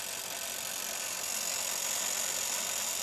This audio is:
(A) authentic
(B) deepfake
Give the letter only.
A